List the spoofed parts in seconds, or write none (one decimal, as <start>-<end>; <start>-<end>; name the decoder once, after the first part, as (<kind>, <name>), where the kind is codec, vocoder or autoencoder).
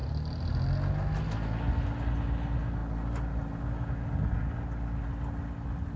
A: none